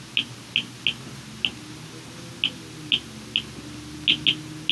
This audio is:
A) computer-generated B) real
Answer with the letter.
B